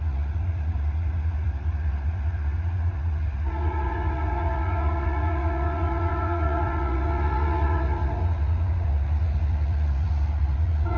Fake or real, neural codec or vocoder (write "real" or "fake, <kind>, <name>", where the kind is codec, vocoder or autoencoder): fake, vocoder, Vocos